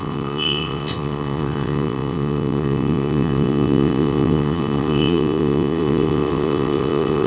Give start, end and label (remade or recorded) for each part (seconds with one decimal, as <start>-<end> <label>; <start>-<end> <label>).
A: 0.0-7.3 remade